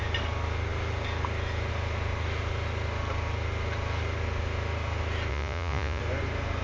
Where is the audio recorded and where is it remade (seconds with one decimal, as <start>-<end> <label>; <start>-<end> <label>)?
0.0-5.3 recorded; 5.3-6.0 remade; 6.0-6.6 recorded